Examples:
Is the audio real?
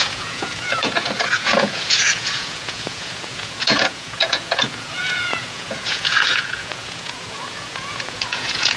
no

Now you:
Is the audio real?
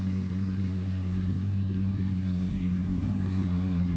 no